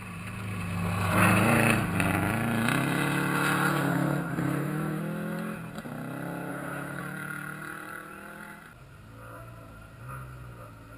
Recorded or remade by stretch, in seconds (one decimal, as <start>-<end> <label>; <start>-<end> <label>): 0.0-3.7 recorded; 3.7-5.0 remade; 5.0-6.5 recorded; 6.5-7.0 remade; 7.0-11.0 recorded

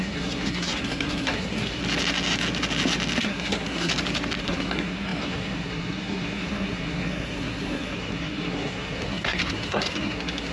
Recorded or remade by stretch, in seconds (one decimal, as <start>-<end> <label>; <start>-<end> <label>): 0.0-1.8 remade; 1.8-3.2 recorded; 3.2-3.9 remade; 3.9-4.4 recorded; 4.4-10.5 remade

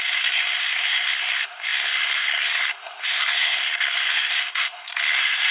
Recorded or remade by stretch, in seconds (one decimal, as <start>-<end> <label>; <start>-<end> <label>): 0.0-5.5 remade

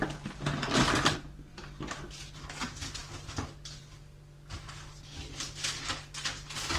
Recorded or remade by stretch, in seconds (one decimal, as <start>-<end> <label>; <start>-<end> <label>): 0.0-6.8 recorded

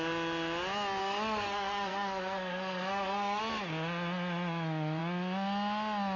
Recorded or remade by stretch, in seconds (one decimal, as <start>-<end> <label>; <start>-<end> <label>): 0.0-1.0 recorded; 1.0-3.4 remade; 3.4-6.2 recorded